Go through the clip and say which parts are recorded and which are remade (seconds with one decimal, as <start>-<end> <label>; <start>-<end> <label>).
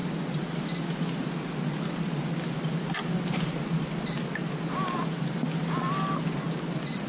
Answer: 0.0-7.1 recorded